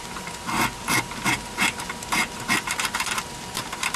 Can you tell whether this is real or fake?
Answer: real